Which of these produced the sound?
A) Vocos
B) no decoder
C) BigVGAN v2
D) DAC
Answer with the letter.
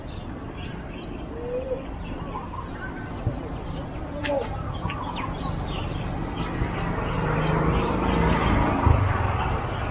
B